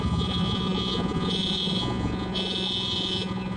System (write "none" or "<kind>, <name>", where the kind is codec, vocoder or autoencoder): vocoder, Vocos